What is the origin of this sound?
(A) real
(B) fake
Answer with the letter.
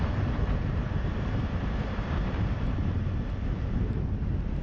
B